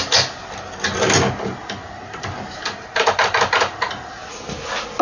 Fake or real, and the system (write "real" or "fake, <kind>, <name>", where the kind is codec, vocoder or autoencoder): real